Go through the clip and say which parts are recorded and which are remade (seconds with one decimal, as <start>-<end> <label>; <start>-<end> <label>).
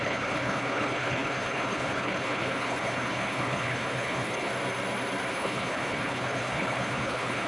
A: 0.0-4.5 remade; 4.5-5.3 recorded; 5.3-7.5 remade